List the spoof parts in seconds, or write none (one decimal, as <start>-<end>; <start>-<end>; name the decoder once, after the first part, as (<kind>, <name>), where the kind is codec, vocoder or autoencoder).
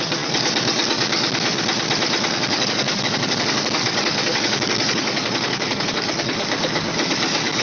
0.0-1.5 (codec, DAC); 2.2-7.6